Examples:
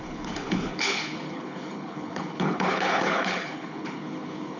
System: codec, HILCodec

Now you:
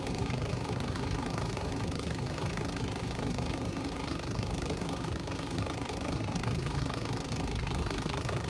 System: codec, SNAC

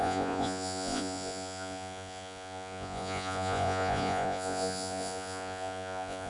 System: vocoder, Vocos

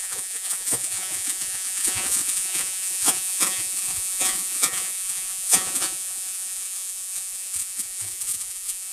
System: vocoder, Vocos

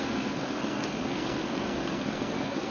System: codec, SNAC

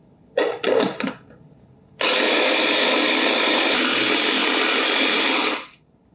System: none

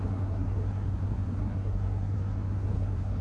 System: codec, SNAC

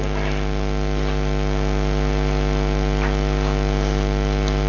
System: none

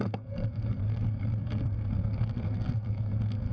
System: codec, SNAC